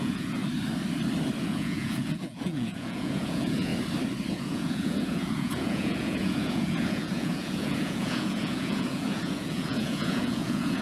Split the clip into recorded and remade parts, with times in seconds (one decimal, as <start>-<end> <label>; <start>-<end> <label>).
0.0-0.4 remade; 0.4-1.4 recorded; 1.4-3.7 remade; 3.7-4.3 recorded; 4.3-10.8 remade